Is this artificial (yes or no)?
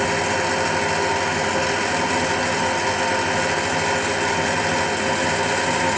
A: no